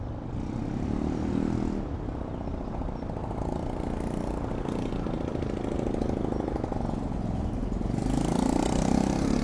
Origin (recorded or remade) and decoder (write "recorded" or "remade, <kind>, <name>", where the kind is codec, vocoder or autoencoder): recorded